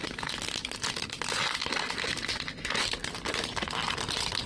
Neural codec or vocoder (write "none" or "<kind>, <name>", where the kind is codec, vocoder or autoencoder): none